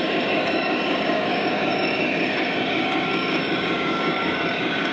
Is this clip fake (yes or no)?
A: yes